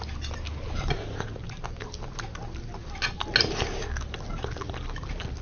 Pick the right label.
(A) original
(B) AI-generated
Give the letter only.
A